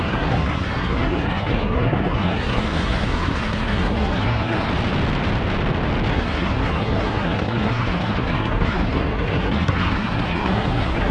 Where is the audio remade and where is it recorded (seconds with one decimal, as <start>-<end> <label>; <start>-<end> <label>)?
0.0-4.7 remade; 4.7-6.1 recorded; 6.1-11.1 remade